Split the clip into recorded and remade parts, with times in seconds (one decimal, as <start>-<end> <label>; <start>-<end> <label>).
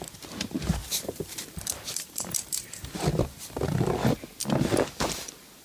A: 0.0-0.8 recorded; 0.8-3.9 remade; 3.9-5.6 recorded